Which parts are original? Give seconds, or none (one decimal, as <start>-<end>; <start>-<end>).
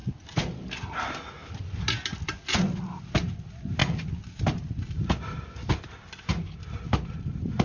0.0-7.6